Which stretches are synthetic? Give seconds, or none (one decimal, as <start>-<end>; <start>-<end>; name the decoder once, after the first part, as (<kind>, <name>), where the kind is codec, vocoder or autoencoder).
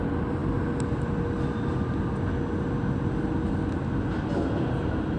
none